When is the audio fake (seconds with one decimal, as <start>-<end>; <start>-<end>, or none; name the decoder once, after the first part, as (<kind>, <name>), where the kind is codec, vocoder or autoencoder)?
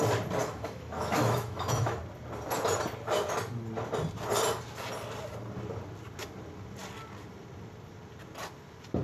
0.4-2.0 (autoencoder, DAC-VAE)